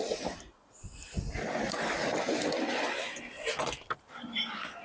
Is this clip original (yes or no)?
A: yes